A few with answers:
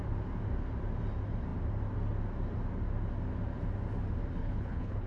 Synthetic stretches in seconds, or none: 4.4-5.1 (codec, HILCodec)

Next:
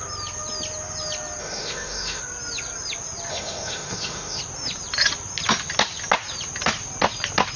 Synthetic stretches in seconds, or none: 1.4-2.2 (autoencoder, DAC-VAE); 3.3-4.4